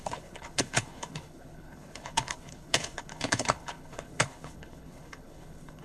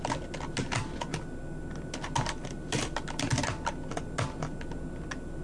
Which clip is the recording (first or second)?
second